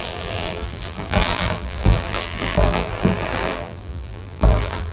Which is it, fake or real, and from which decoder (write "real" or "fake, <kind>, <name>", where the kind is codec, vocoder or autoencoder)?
fake, vocoder, BigVGAN v2